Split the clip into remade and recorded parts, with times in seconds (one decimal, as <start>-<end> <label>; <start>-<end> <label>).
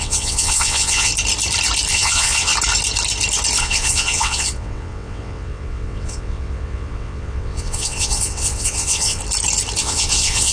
0.0-1.1 remade; 1.1-1.9 recorded; 1.9-2.5 remade; 2.5-3.6 recorded; 3.6-9.2 remade; 9.2-9.8 recorded; 9.8-10.5 remade